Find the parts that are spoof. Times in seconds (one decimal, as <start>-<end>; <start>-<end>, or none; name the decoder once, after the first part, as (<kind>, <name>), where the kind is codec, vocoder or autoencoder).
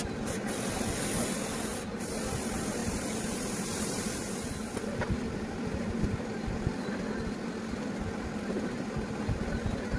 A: 2.8-6.0 (vocoder, BigVGAN v2)